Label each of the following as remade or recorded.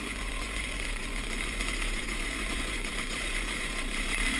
remade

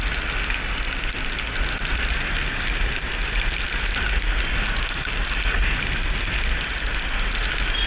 recorded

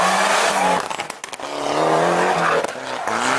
recorded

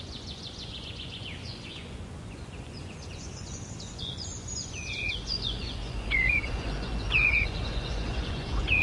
remade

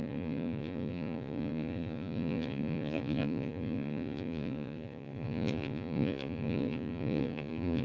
remade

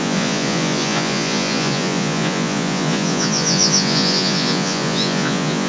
remade